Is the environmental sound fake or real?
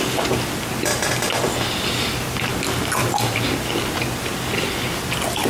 real